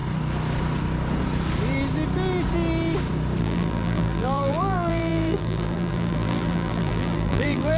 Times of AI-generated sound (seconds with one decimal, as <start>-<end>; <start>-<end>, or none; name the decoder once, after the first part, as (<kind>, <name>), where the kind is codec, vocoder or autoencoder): 3.4-7.8 (vocoder, BigVGAN v2)